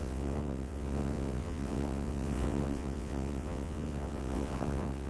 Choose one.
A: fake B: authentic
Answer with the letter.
A